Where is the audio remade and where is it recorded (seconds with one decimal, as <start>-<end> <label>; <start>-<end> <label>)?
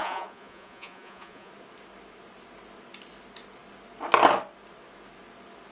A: 0.0-1.5 remade; 1.5-5.7 recorded